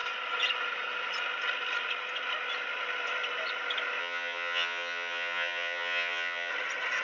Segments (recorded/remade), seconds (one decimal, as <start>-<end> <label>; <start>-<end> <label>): 0.0-4.0 recorded; 4.0-6.5 remade; 6.5-7.0 recorded